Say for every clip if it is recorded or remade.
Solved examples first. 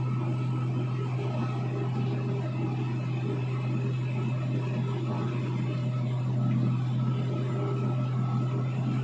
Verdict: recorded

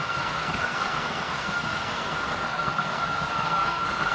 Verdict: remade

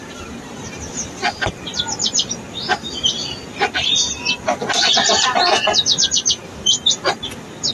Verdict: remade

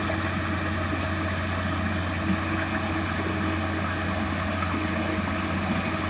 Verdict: recorded